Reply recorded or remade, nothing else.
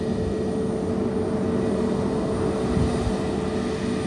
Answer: recorded